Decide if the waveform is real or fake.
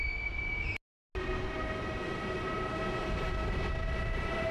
real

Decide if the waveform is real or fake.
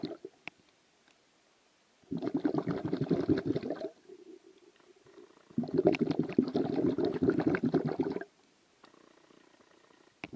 real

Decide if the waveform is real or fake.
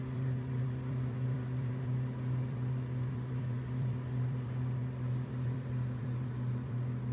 fake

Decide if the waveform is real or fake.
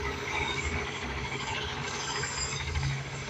fake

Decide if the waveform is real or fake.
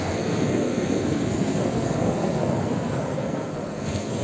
fake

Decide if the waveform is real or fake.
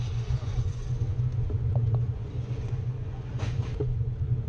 fake